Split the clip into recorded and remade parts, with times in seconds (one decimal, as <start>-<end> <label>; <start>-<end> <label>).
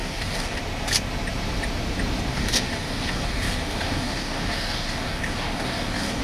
0.0-0.6 remade; 0.6-2.3 recorded; 2.3-6.2 remade